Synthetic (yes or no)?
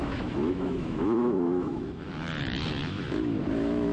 yes